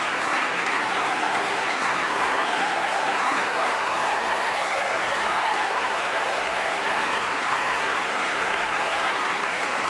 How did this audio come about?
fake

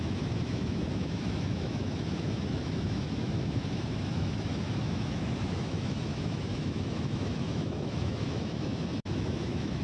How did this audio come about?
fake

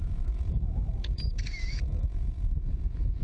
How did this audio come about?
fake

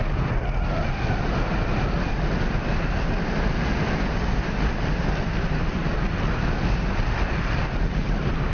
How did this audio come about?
real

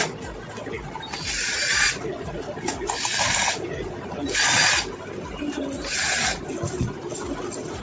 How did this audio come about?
real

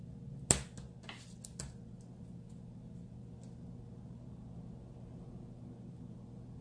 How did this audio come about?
real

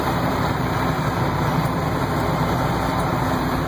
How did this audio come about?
fake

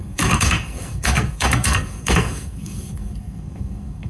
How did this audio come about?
fake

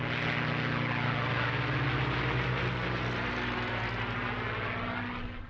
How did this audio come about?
real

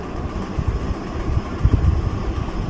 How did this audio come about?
real